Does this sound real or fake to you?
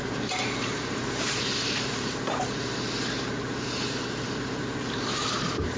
fake